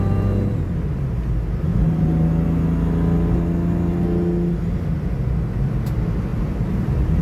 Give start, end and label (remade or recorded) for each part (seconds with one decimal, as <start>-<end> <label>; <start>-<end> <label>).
0.0-6.3 recorded; 6.3-7.2 remade